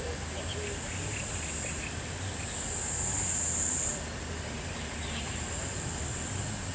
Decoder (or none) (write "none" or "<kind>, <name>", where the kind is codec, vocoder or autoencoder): none